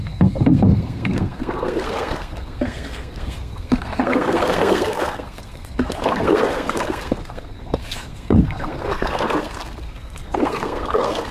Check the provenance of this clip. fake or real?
fake